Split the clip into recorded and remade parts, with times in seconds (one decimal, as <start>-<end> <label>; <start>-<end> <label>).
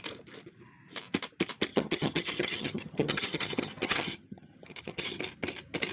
0.0-1.7 recorded; 1.7-5.2 remade; 5.2-5.9 recorded